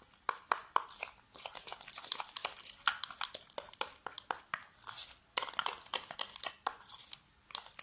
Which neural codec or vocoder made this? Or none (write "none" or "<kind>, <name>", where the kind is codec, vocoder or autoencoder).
none